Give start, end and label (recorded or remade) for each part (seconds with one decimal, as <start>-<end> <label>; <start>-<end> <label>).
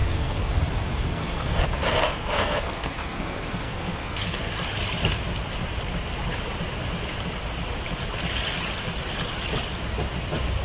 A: 0.0-0.5 remade; 0.5-0.9 recorded; 0.9-4.5 remade; 4.5-10.6 recorded